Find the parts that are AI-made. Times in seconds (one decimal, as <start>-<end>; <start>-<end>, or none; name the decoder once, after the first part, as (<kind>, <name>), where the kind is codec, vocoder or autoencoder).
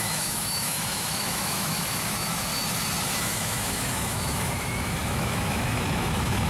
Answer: 0.0-2.5 (autoencoder, DAC-VAE); 3.2-6.5